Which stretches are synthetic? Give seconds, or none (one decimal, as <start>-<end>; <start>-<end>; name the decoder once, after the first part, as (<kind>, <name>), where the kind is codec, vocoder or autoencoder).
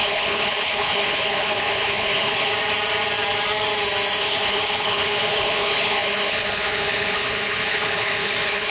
0.0-2.5 (codec, HILCodec); 4.2-8.7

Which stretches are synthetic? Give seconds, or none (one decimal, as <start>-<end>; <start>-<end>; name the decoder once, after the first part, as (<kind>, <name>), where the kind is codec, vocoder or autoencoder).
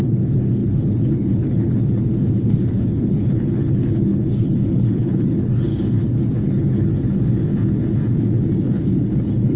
0.0-7.5 (codec, HILCodec); 8.6-9.6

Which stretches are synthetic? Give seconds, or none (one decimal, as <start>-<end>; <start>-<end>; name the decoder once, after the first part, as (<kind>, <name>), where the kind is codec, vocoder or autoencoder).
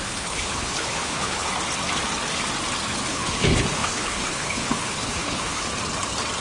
0.0-1.5 (codec, HILCodec); 3.1-5.7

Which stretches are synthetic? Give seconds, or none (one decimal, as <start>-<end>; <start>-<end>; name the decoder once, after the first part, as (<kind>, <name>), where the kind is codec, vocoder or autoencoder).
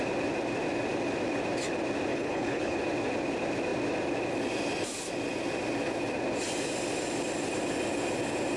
2.1-2.8 (codec, HILCodec)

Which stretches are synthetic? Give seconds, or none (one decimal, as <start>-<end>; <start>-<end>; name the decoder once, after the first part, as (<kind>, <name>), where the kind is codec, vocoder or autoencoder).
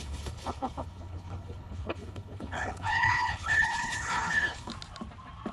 0.0-4.7 (codec, HILCodec)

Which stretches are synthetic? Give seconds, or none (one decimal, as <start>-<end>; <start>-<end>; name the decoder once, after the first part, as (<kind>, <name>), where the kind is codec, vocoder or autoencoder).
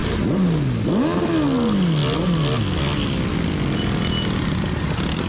none